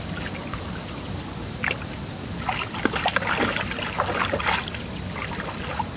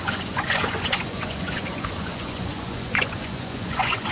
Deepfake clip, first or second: second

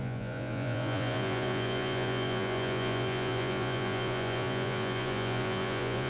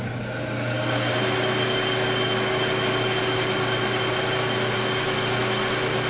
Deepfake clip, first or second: first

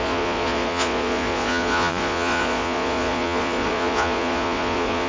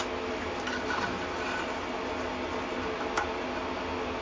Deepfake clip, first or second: first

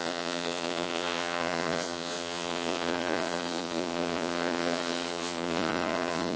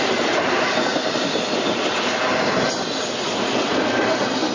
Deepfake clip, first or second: first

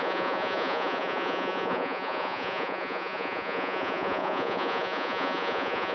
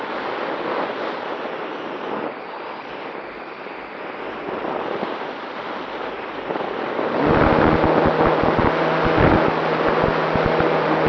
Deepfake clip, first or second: first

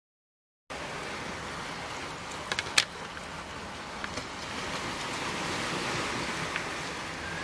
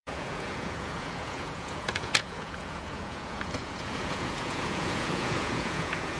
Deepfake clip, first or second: second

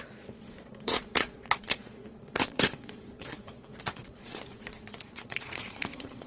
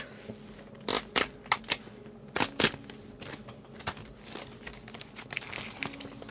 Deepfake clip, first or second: first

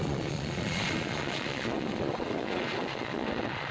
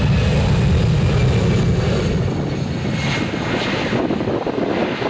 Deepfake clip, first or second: first